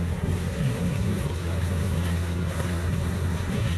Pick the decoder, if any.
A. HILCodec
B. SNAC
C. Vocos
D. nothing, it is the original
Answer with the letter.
B